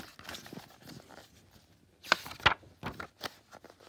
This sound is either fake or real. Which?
real